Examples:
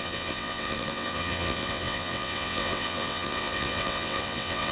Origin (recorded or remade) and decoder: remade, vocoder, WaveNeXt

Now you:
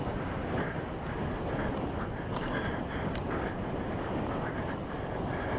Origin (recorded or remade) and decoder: recorded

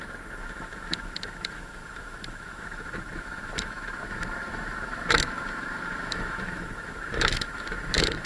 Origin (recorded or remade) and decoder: remade, autoencoder, DAC-VAE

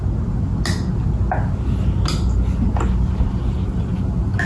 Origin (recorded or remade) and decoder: recorded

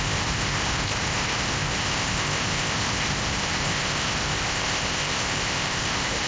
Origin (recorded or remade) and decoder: remade, codec, ZipCodec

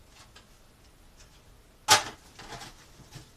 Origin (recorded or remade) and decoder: recorded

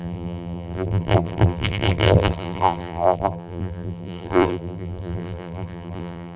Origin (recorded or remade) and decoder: remade, vocoder, BigVGAN v2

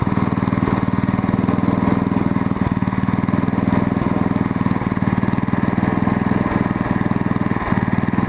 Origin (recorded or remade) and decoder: recorded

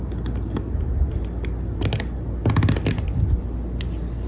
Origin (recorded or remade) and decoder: recorded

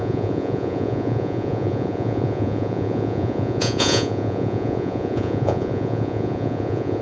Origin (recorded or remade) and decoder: remade, vocoder, Vocos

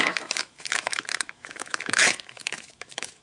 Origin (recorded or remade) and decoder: remade, autoencoder, DAC-VAE